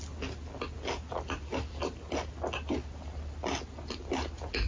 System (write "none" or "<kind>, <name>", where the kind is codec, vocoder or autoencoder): none